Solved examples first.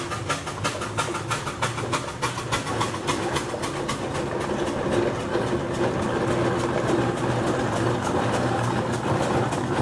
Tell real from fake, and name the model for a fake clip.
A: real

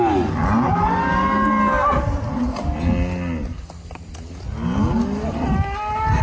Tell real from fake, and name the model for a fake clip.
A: real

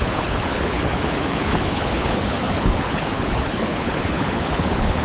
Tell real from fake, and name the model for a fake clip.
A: fake, codec, HILCodec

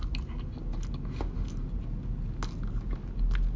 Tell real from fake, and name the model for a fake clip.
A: real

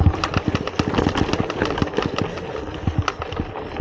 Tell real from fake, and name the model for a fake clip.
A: real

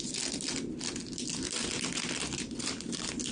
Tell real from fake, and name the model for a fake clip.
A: real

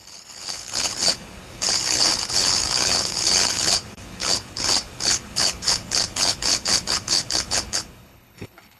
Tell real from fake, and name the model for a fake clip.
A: fake, codec, HILCodec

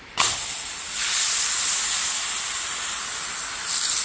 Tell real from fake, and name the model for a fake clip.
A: real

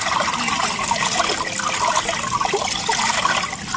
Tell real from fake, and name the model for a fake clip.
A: real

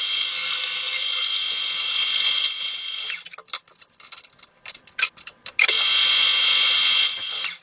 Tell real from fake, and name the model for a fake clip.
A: real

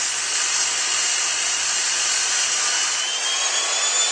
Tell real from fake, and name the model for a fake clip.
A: real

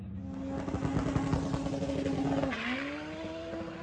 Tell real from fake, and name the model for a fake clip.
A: real